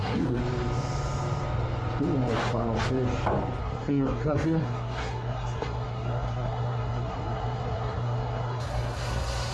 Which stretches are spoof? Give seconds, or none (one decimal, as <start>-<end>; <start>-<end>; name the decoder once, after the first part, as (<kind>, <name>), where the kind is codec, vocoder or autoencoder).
0.0-0.4 (codec, SNAC); 3.6-9.5